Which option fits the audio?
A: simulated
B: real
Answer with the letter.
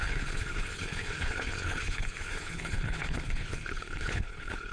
A